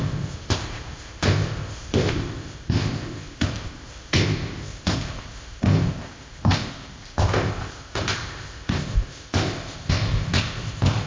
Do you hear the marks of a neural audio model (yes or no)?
yes